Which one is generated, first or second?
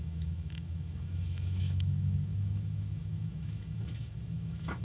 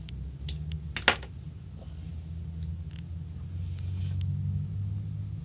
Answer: first